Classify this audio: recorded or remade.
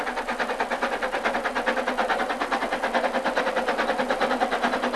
recorded